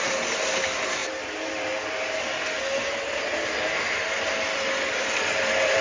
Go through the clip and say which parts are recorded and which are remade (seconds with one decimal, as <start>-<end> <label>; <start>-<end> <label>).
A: 0.0-5.8 recorded